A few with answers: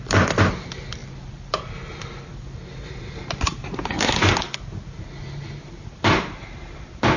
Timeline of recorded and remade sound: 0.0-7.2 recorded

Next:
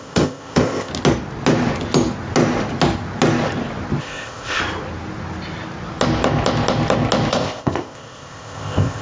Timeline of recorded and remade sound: 0.0-0.9 remade; 0.9-4.0 recorded; 4.0-4.6 remade; 4.6-7.3 recorded; 7.3-9.0 remade